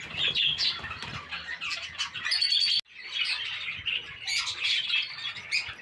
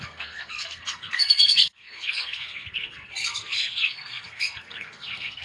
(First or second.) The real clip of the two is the first